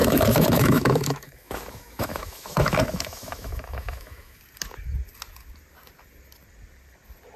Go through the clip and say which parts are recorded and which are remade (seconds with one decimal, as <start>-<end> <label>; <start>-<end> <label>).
0.0-4.4 remade; 4.4-7.4 recorded